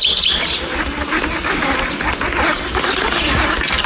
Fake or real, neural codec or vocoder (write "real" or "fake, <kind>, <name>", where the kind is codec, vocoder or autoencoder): real